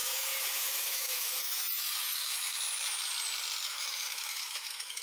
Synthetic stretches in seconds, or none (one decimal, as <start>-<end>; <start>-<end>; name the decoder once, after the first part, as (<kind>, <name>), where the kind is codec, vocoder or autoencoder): 0.0-3.0 (autoencoder, DAC-VAE); 3.7-5.0